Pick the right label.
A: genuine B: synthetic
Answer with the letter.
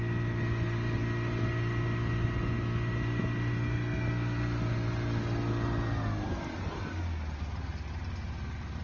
A